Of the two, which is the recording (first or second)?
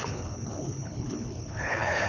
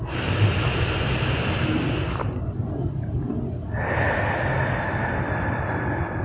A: second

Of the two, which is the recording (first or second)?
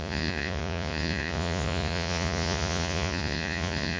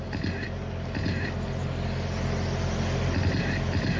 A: second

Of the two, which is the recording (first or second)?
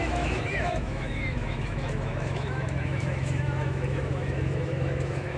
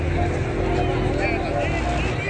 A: second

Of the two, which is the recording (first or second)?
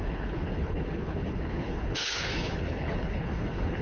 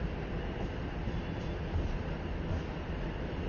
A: second